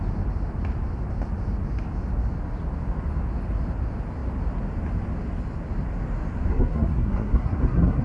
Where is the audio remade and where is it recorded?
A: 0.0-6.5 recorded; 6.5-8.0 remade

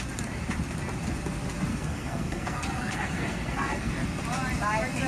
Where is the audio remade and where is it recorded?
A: 0.0-1.7 recorded; 1.7-3.9 remade; 3.9-5.1 recorded

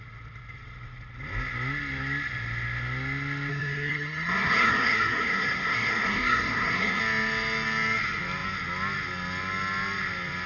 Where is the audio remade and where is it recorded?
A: 0.0-3.5 recorded; 3.5-7.0 remade; 7.0-10.5 recorded

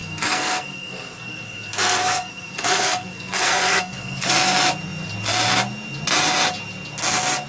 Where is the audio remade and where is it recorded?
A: 0.0-4.3 remade; 4.3-7.5 recorded

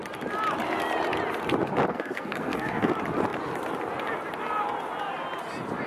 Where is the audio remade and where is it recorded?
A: 0.0-1.9 recorded; 1.9-2.9 remade; 2.9-5.9 recorded